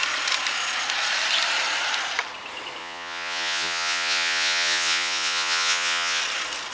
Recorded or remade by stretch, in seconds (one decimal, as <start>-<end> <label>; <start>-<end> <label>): 0.0-2.8 recorded; 2.8-6.2 remade; 6.2-6.7 recorded